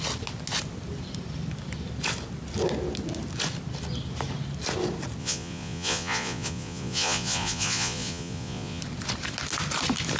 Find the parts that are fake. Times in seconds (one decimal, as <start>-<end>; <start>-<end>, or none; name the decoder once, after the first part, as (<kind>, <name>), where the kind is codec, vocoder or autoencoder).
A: 5.2-8.8 (vocoder, Vocos)